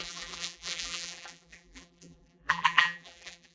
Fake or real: fake